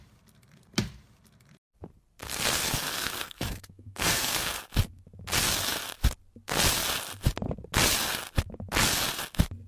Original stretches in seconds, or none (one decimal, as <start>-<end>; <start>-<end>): 0.0-2.3; 4.6-9.7